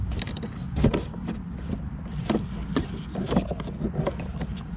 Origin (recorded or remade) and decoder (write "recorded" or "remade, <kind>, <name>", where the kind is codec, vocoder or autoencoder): recorded